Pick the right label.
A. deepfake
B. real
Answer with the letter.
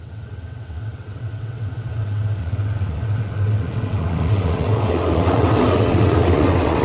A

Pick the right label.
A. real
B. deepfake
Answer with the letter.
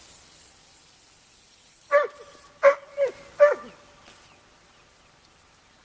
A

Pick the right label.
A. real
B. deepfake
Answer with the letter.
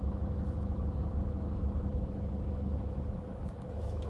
B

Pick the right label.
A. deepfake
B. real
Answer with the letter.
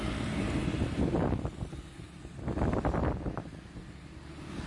A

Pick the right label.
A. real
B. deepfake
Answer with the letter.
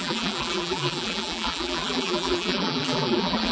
B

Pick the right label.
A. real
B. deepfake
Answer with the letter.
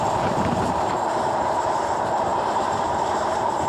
B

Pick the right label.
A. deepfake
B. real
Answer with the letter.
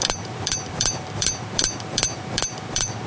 A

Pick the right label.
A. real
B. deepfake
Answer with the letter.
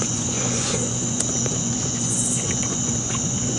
B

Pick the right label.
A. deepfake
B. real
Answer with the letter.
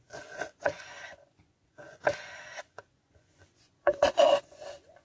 A